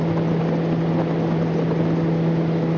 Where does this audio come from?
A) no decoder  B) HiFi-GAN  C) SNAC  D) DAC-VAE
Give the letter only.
A